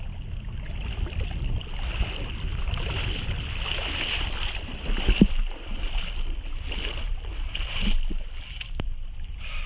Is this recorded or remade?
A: recorded